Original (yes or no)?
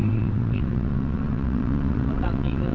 no